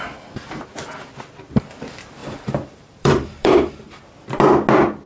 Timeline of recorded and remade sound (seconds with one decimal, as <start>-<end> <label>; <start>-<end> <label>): 0.0-2.2 recorded; 2.2-3.7 remade; 3.7-5.1 recorded